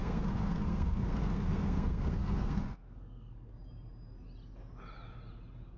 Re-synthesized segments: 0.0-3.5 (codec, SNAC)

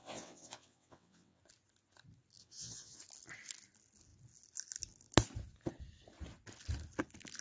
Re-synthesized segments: 0.0-1.4 (vocoder, WaveNeXt); 2.4-3.0

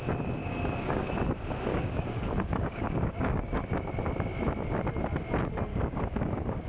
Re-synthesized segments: 0.4-1.1 (codec, DAC); 1.7-3.7; 5.7-6.7

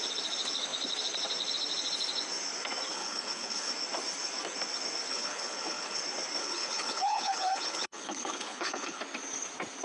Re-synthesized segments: 2.9-3.7 (codec, HILCodec); 5.1-6.0; 6.4-9.0

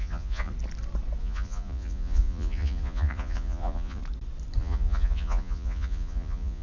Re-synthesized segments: 0.0-0.5 (vocoder, Vocos); 1.2-4.0; 4.6-6.6

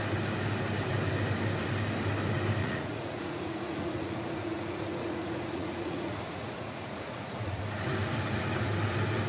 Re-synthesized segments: 2.6-7.6 (vocoder, Vocos)